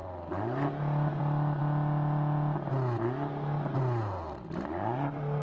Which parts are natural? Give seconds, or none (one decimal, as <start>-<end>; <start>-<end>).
0.0-5.4